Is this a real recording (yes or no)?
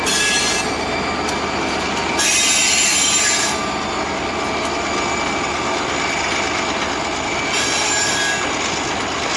yes